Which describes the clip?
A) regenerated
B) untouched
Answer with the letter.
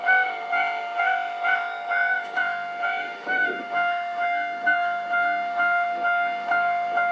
A